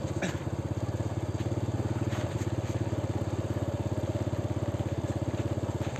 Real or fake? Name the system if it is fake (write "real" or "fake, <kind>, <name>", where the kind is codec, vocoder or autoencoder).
real